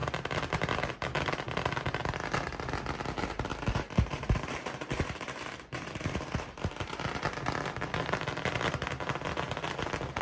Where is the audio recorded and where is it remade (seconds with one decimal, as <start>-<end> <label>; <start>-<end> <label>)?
0.0-3.5 recorded; 3.5-7.0 remade; 7.0-10.2 recorded